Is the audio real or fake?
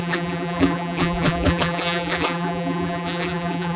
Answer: fake